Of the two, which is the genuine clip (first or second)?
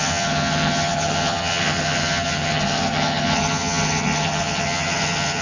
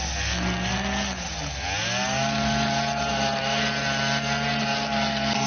second